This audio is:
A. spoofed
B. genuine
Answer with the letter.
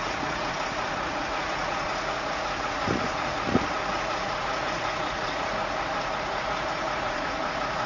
A